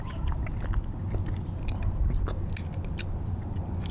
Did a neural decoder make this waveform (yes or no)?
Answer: no